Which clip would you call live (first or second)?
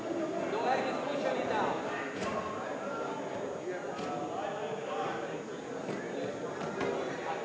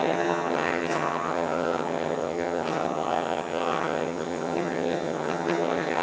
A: first